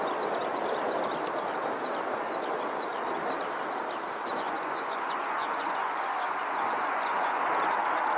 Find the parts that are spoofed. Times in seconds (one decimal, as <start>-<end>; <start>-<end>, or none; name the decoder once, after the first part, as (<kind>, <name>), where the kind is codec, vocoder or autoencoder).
4.3-7.4 (vocoder, Vocos)